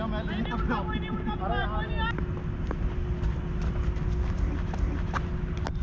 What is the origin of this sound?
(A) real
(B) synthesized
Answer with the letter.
A